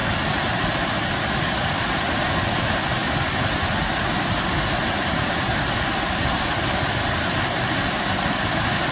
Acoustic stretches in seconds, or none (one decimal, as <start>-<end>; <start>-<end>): 0.0-8.9